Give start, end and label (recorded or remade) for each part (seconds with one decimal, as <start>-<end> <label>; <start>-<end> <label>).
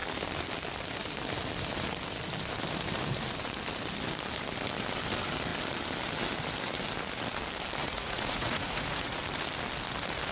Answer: 0.0-7.8 recorded; 7.8-9.2 remade; 9.2-10.3 recorded